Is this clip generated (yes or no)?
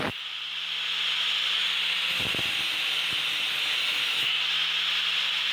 no